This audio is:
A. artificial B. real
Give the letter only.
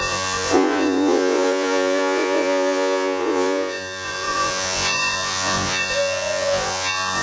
A